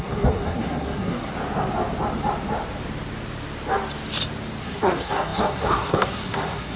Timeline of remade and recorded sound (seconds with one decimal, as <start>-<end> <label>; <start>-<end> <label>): 0.0-1.3 remade; 1.3-4.6 recorded; 4.6-6.8 remade